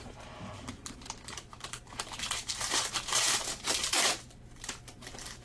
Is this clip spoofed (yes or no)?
yes